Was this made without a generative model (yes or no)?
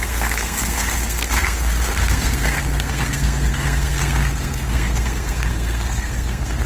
no